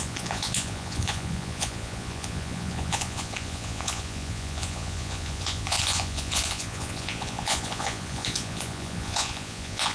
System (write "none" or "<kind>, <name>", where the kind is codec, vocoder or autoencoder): vocoder, Vocos